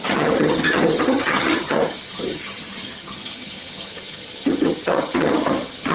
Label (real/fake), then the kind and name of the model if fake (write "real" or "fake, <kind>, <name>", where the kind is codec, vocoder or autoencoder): fake, vocoder, HiFi-GAN